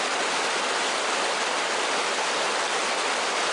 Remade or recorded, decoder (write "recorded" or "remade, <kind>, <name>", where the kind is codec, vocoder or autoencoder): recorded